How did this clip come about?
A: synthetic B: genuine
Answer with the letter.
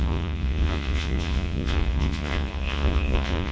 A